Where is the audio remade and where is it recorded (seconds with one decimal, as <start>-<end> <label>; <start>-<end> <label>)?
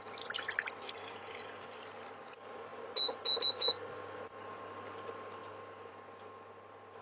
0.0-1.0 recorded; 1.0-1.7 remade; 1.7-7.0 recorded